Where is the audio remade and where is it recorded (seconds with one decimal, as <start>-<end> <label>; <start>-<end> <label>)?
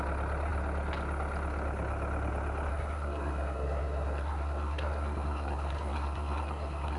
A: 0.0-2.7 recorded; 2.7-7.0 remade